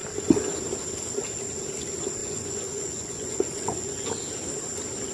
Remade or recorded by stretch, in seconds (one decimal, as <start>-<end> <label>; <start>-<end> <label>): 0.0-2.2 recorded; 2.2-4.1 remade; 4.1-5.1 recorded